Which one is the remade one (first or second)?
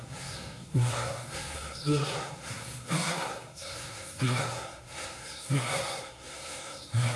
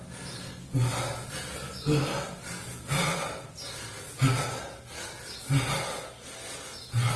first